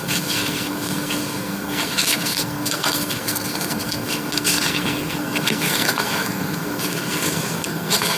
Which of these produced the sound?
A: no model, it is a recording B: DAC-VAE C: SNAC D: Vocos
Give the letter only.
C